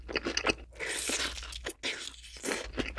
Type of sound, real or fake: real